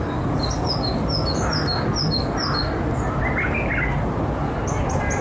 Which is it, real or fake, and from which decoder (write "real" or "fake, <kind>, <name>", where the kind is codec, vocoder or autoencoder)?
real